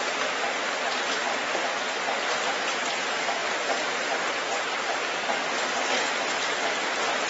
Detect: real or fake real